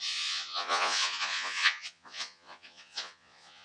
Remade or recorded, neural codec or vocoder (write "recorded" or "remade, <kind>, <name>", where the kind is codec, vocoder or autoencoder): remade, vocoder, Vocos